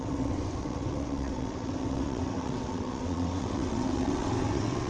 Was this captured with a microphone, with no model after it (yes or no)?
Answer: no